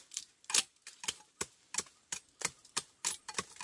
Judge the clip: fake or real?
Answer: real